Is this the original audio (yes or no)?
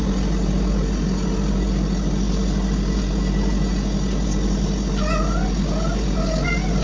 yes